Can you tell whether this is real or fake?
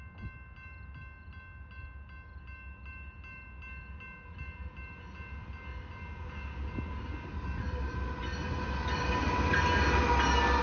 real